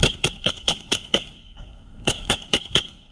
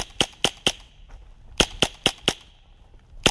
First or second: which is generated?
first